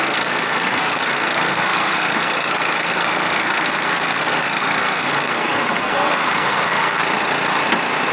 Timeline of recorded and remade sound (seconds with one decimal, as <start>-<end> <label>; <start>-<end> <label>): 0.0-7.0 remade; 7.0-8.1 recorded